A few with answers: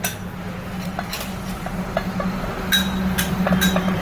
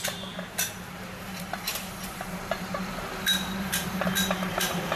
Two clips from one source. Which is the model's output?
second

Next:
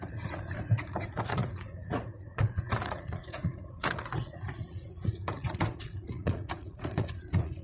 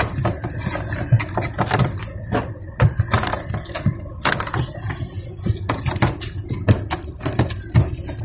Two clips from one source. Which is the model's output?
first